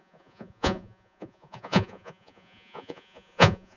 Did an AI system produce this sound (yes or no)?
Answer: yes